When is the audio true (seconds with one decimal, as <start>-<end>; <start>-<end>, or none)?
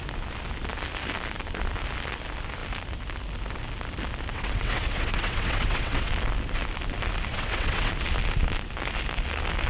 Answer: 0.0-4.3; 6.1-7.3; 7.9-9.7